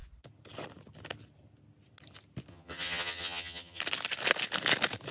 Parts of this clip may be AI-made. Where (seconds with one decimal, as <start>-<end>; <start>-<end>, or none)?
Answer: 2.5-3.8